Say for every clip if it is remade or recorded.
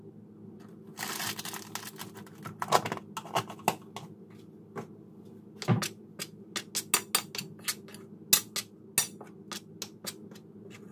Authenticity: recorded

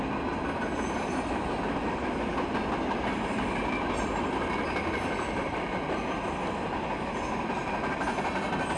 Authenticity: recorded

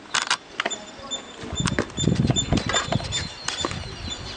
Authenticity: recorded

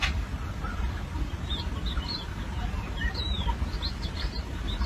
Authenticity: remade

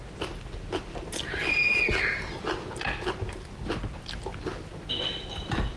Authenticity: recorded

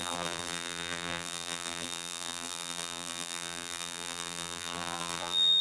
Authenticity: remade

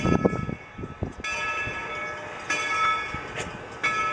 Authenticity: recorded